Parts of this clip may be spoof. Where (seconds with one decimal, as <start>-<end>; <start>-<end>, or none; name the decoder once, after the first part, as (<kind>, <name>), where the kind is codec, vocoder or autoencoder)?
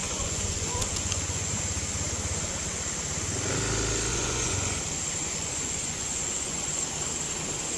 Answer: 0.0-1.6 (vocoder, Vocos); 4.1-4.8; 5.2-6.8